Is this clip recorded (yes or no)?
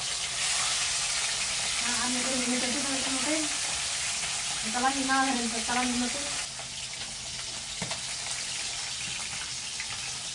yes